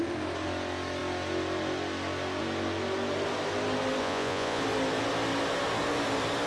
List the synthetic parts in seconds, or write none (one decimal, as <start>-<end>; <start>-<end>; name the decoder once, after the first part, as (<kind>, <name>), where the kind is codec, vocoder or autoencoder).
4.0-4.6 (vocoder, Vocos)